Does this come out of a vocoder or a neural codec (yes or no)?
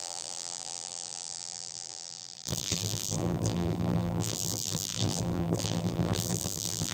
yes